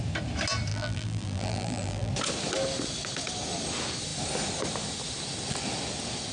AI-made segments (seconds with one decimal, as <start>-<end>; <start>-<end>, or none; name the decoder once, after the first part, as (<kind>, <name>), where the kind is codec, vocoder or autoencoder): 0.7-2.1 (vocoder, BigVGAN v2)